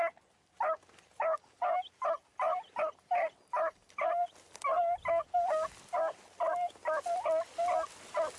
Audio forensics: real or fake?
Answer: real